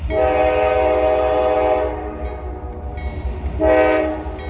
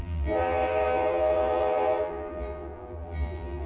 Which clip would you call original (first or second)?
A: first